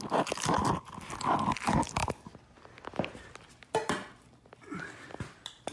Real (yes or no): yes